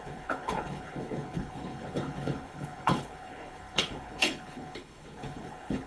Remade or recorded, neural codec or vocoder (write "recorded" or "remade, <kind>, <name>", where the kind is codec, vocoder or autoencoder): remade, codec, HILCodec